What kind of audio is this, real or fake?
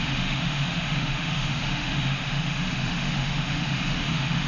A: fake